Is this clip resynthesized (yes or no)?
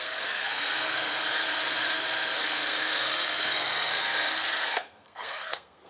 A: yes